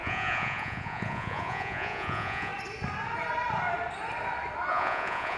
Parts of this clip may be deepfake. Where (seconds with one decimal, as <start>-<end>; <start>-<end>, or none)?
0.0-2.5; 4.7-5.4